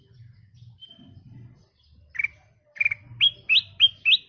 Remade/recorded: recorded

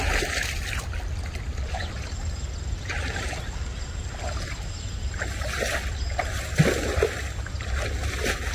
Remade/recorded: recorded